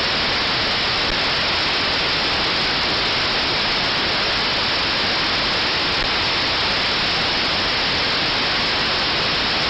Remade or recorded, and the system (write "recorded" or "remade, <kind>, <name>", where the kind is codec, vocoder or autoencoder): recorded